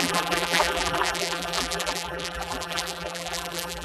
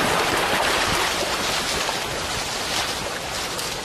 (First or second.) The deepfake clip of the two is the first